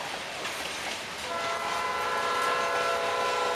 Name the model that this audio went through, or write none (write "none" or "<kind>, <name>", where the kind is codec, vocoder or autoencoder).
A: none